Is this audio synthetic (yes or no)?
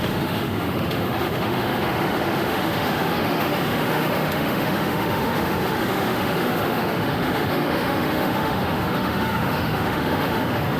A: yes